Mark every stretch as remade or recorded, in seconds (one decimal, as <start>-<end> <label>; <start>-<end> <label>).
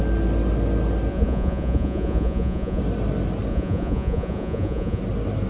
0.0-1.1 recorded; 1.1-2.8 remade; 2.8-3.5 recorded; 3.5-5.0 remade; 5.0-5.5 recorded